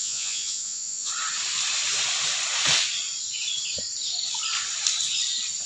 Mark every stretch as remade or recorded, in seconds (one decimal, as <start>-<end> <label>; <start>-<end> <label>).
0.0-1.1 remade; 1.1-5.7 recorded